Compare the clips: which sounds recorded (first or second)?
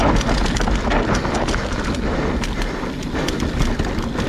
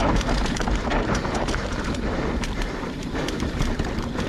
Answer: first